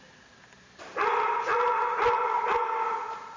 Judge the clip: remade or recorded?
recorded